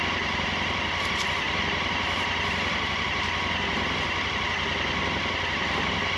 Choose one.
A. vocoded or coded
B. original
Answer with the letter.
B